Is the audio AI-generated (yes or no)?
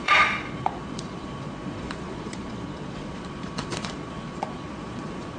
yes